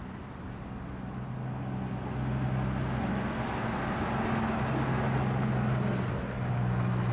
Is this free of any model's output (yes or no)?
yes